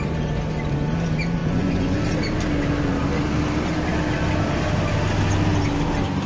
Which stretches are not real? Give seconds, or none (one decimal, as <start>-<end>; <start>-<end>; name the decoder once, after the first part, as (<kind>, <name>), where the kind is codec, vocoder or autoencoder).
1.4-2.0 (vocoder, Vocos)